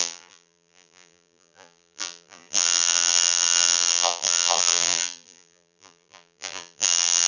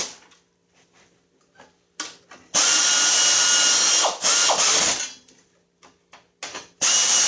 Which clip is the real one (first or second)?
second